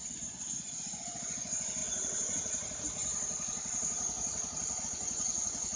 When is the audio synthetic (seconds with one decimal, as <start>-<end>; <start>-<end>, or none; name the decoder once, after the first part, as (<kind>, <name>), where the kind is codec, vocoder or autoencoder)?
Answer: 0.0-1.8 (vocoder, Vocos); 4.8-5.8